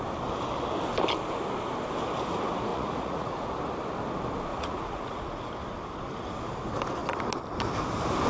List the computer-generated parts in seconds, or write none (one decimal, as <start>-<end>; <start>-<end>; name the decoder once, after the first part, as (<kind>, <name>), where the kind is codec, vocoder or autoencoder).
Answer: 2.7-3.5 (vocoder, Vocos); 4.5-5.5